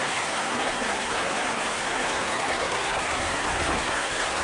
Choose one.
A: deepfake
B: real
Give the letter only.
A